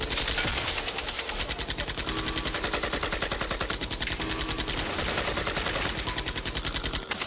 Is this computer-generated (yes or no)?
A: no